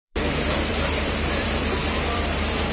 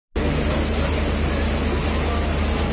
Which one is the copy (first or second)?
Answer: first